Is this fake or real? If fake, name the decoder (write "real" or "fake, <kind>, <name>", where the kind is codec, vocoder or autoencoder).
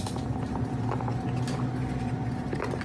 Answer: real